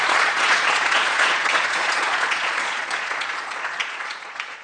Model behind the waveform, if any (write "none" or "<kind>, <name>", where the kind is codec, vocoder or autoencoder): vocoder, Vocos